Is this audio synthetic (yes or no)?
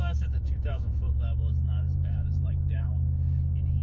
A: yes